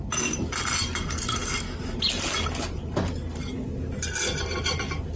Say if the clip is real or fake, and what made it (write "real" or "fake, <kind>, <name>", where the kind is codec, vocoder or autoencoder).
real